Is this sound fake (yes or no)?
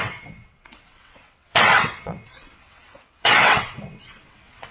yes